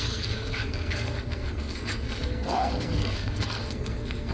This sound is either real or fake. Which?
fake